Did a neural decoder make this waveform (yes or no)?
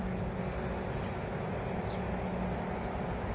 no